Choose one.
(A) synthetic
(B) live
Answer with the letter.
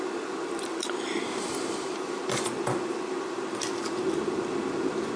B